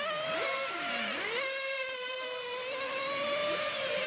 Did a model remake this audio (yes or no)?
yes